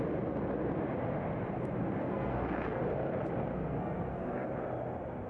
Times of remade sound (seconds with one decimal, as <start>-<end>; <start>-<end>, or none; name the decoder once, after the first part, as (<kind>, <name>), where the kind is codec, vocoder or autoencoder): 2.0-2.8 (codec, SNAC); 3.5-4.5